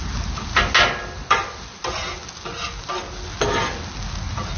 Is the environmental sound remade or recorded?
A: recorded